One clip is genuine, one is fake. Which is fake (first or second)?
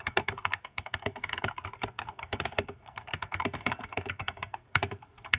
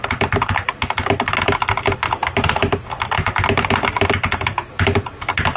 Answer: first